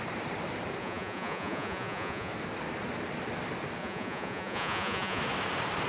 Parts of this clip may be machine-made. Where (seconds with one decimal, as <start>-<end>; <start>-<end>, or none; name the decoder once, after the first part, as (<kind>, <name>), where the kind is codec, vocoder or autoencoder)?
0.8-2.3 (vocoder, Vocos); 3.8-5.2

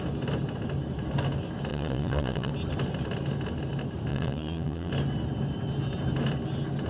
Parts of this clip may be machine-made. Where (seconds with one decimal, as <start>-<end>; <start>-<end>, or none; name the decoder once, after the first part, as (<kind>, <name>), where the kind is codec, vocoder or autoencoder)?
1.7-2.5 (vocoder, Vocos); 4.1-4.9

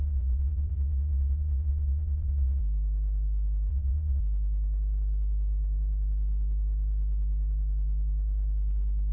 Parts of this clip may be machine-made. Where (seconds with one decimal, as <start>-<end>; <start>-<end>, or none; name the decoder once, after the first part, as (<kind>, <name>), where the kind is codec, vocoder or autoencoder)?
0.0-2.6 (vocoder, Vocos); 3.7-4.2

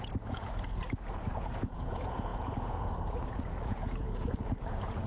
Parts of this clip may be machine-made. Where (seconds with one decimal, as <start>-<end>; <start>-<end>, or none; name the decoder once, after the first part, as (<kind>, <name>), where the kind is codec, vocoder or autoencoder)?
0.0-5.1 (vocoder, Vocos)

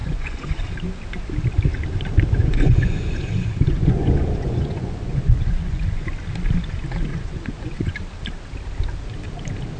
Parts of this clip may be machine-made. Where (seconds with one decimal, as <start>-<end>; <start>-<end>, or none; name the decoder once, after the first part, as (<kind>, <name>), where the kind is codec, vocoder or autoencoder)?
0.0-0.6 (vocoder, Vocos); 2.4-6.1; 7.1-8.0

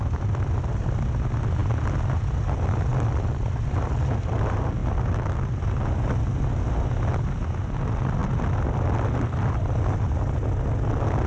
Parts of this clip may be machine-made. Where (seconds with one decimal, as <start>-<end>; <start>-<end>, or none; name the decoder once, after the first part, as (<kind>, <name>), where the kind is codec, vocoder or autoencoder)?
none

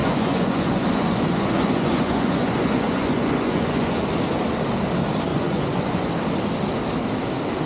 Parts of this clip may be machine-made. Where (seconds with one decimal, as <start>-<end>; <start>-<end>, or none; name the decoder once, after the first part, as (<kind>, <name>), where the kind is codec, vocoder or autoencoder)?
0.0-4.0 (vocoder, Vocos); 5.3-6.1